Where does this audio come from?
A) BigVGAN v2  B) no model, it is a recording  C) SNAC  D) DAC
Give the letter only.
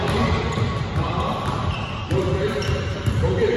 A